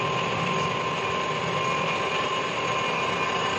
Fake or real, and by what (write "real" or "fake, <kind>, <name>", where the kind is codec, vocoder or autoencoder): real